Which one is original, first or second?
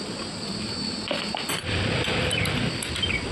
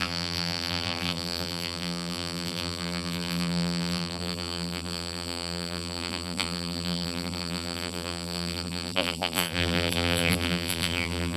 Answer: first